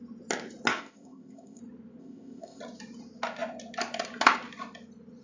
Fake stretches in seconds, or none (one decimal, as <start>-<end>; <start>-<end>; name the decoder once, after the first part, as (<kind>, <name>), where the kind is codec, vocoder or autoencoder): 0.7-1.6 (codec, ZipCodec); 2.0-2.6